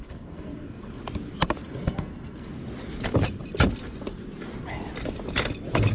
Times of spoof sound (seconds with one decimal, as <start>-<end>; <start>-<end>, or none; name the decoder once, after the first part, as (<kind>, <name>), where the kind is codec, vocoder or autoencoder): 0.0-1.0 (codec, SNAC); 1.6-2.5